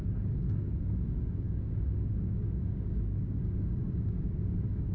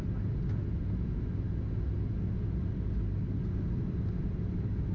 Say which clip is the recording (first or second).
second